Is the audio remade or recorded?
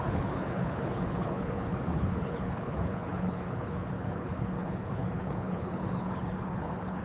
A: remade